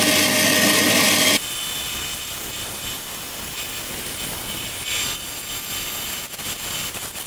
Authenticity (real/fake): real